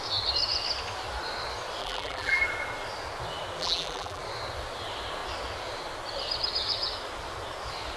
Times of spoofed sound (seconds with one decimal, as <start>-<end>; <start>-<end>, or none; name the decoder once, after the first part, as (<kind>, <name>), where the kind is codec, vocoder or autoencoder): 1.8-2.4 (vocoder, BigVGAN v2); 3.6-4.2